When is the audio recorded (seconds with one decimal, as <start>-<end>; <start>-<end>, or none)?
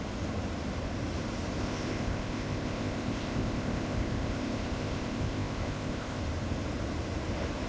0.0-1.6; 6.2-7.7